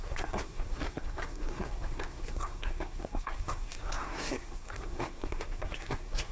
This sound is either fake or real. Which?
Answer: fake